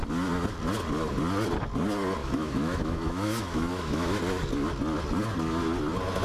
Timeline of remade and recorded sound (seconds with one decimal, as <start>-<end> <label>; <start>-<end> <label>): 0.0-2.2 recorded; 2.2-4.2 remade; 4.2-6.2 recorded